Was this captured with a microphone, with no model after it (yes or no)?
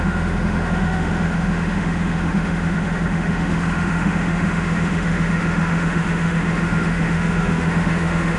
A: no